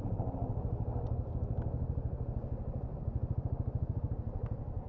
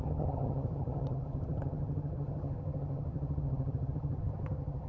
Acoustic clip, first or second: first